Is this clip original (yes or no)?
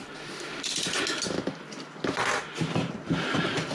yes